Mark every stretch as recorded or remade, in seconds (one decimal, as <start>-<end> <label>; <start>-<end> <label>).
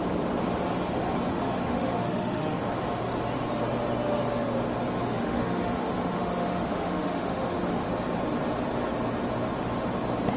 0.0-1.3 recorded; 1.3-2.7 remade; 2.7-5.0 recorded; 5.0-7.9 remade; 7.9-10.4 recorded